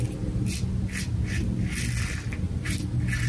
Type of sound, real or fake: real